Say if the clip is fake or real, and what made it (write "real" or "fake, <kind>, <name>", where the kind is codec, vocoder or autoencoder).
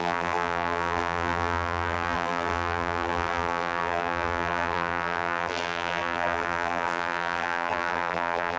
fake, vocoder, BigVGAN v2